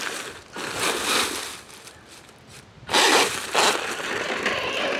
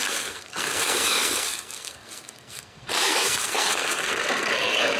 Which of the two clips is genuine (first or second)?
first